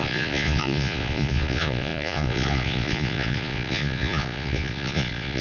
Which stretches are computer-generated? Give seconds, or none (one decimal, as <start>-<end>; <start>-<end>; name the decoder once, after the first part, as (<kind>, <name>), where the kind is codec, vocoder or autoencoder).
0.0-5.4 (vocoder, Vocos)